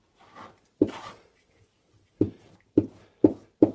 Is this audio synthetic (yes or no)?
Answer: yes